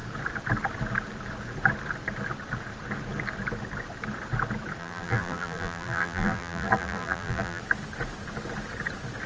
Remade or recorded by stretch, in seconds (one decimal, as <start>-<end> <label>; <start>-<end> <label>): 0.0-4.8 recorded; 4.8-7.6 remade; 7.6-9.3 recorded